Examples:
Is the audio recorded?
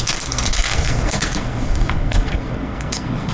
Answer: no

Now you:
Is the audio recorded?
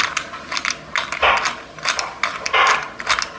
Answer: yes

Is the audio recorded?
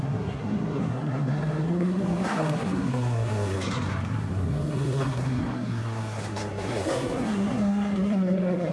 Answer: no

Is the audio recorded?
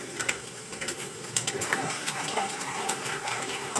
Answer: no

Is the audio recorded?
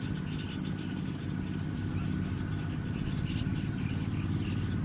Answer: yes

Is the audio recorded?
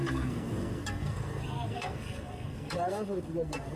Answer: no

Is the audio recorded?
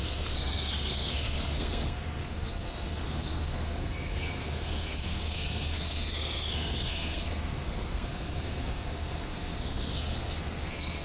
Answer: no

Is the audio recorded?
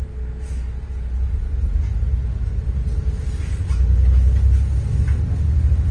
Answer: yes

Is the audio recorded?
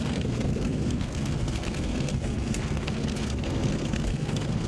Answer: no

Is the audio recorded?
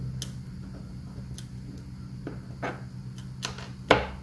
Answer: yes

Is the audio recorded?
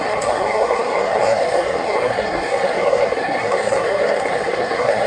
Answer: no